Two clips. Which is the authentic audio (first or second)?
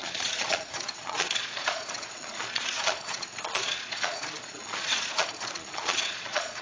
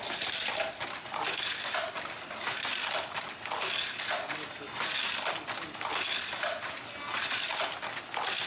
second